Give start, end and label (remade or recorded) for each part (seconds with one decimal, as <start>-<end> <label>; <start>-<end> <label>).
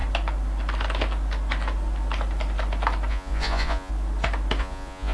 0.0-3.1 recorded; 3.1-3.9 remade; 3.9-4.6 recorded; 4.6-5.1 remade